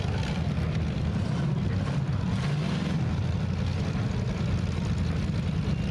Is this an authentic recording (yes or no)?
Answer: yes